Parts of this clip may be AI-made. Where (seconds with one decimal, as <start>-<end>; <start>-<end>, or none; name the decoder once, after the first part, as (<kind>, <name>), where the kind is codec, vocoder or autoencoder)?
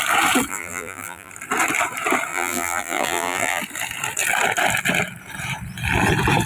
0.5-1.3 (vocoder, BigVGAN v2); 2.3-3.6